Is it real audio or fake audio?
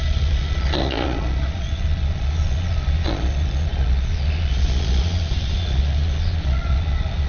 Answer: fake